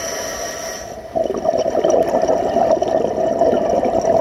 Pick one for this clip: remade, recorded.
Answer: recorded